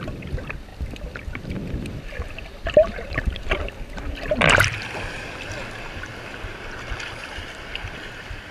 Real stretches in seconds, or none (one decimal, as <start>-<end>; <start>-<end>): 0.0-8.5